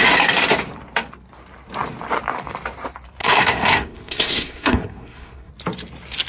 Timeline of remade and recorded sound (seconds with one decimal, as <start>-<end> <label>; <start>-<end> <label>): 0.0-3.2 recorded; 3.2-5.5 remade; 5.5-6.3 recorded